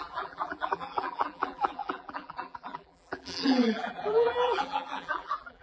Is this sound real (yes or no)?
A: no